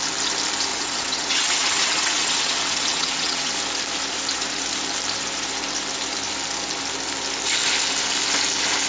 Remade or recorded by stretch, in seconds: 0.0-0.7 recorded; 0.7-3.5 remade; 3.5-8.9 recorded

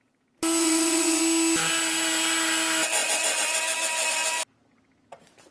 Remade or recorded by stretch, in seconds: 0.0-0.6 recorded; 0.6-1.2 remade; 1.2-5.5 recorded